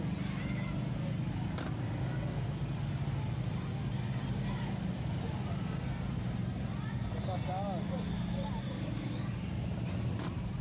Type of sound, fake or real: real